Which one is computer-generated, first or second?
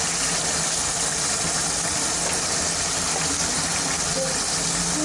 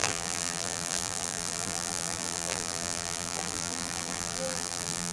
second